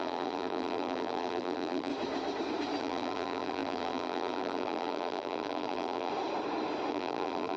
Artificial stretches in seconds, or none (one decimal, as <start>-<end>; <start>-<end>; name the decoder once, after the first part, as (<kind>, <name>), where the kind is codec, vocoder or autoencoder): 0.0-1.9 (vocoder, BigVGAN v2); 2.8-6.1; 6.9-7.6